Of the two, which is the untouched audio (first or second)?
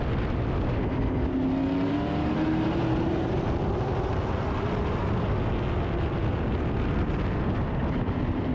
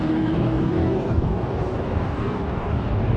first